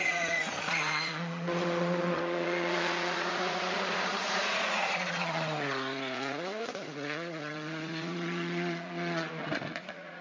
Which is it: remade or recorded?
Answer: remade